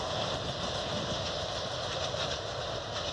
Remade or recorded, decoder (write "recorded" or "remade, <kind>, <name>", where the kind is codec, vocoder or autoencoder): recorded